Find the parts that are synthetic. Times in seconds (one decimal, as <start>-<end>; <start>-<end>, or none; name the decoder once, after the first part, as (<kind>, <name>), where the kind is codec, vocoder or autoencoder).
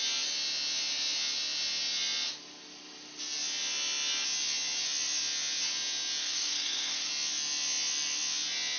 6.2-7.1 (codec, SNAC)